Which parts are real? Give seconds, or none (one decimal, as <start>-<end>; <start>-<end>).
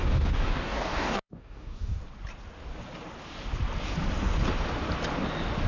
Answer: 2.0-5.7